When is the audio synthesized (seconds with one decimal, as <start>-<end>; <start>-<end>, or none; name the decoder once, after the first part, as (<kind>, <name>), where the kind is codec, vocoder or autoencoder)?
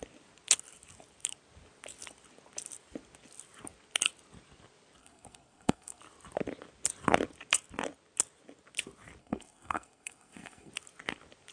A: 5.0-6.0 (codec, SNAC); 9.2-10.7